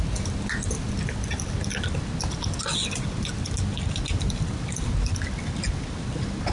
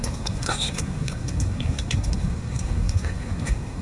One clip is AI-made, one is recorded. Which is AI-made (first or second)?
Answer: second